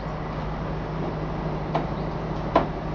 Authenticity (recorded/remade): recorded